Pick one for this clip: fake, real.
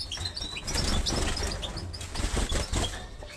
real